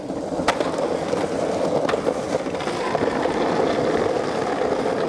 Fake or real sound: real